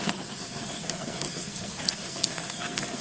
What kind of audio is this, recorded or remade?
remade